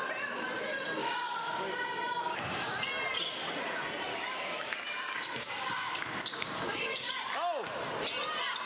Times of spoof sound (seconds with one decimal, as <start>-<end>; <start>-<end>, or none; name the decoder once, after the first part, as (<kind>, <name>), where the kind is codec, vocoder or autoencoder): 1.0-2.7 (codec, DAC); 4.1-7.1